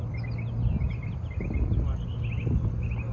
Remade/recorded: recorded